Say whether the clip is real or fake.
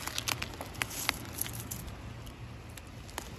real